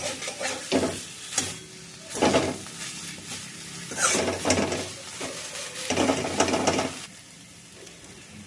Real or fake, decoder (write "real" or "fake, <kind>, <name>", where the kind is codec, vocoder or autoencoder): real